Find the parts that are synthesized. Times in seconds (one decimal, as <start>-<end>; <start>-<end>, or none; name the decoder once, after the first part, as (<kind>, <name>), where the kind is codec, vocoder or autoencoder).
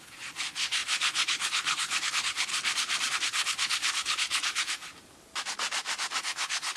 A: 0.0-2.5 (codec, HILCodec); 3.1-4.9; 6.2-6.8